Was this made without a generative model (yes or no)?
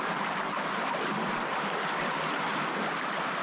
yes